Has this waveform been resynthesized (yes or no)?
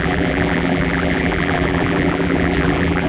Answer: yes